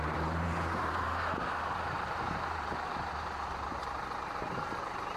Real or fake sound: fake